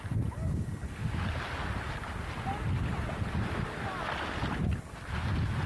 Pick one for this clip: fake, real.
real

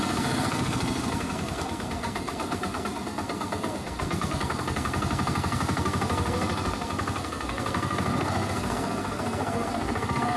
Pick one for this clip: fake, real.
fake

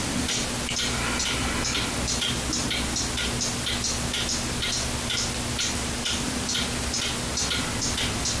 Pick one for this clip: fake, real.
real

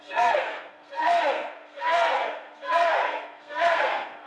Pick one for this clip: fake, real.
fake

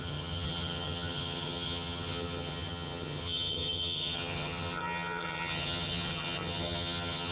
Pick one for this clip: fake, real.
fake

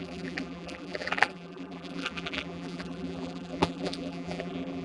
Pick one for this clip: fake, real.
fake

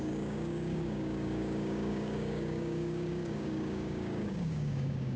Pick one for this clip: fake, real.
fake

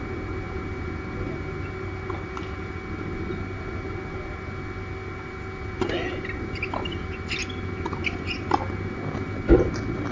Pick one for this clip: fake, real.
real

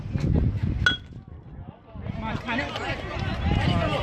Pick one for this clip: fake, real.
real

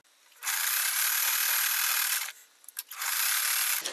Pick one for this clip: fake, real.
real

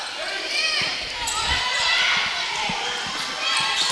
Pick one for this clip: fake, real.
fake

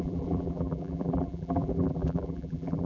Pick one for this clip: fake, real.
fake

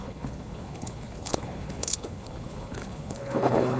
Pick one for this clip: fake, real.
fake